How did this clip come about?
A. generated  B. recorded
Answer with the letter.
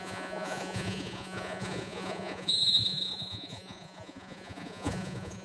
A